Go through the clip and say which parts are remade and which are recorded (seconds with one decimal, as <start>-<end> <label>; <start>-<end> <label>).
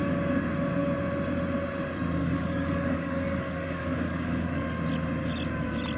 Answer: 0.0-2.2 recorded; 2.2-4.8 remade; 4.8-6.0 recorded